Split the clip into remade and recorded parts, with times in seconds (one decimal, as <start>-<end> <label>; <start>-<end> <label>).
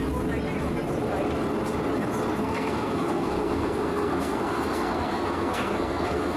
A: 0.0-2.3 recorded; 2.3-6.4 remade